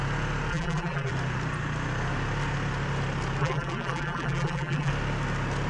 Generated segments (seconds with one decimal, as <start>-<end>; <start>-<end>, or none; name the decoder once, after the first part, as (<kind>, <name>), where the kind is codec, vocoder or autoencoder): 0.5-1.1 (vocoder, BigVGAN v2); 3.4-4.9